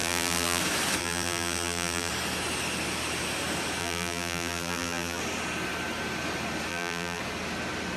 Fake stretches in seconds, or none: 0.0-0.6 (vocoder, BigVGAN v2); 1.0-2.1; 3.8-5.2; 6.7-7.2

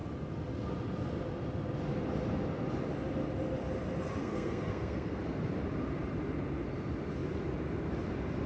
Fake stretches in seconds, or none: 4.2-5.2 (codec, SNAC)

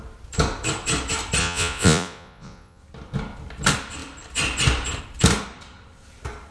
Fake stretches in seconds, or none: 1.4-2.8 (vocoder, Vocos)

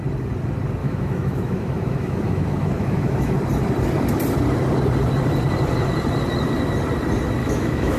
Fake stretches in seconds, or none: 0.8-3.4 (autoencoder, DAC-VAE); 7.4-8.0

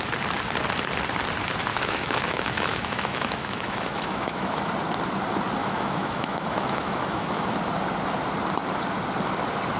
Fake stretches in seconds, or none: 1.7-4.7 (autoencoder, DAC-VAE); 5.6-7.5

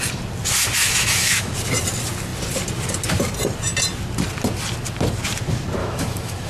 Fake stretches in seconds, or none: 0.8-1.5 (autoencoder, DAC-VAE); 5.8-6.5

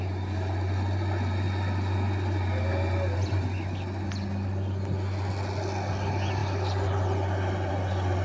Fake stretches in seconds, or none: none

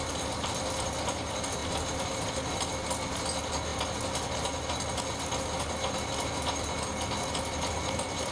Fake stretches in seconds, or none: 1.6-2.3 (vocoder, BigVGAN v2)